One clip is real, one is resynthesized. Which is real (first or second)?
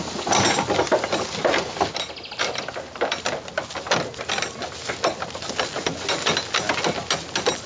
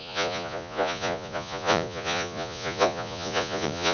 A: first